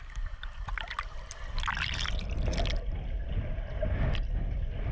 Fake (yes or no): no